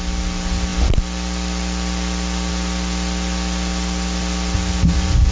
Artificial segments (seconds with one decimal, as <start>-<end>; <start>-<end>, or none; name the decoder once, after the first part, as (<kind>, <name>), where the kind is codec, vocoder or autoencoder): none